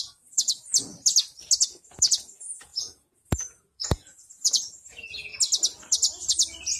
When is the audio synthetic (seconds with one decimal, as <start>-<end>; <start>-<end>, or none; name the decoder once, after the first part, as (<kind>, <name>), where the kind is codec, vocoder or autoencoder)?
0.0-0.9 (vocoder, Vocos); 1.6-5.3